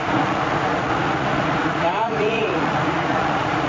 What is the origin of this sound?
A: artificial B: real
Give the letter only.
A